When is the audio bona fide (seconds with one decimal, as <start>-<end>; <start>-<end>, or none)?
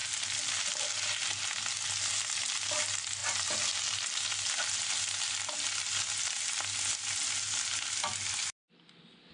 0.0-9.3